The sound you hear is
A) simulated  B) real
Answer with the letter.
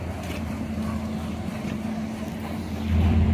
A